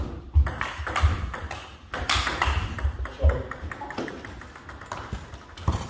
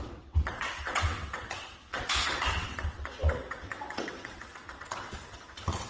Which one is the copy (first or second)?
second